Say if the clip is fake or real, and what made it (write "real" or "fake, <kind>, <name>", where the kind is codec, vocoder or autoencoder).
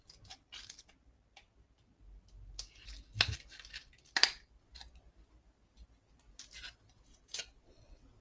real